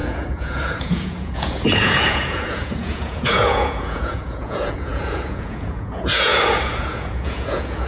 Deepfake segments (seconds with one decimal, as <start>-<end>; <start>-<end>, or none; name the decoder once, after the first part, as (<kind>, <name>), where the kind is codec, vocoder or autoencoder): 0.0-7.9 (vocoder, Vocos)